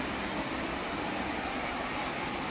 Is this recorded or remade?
recorded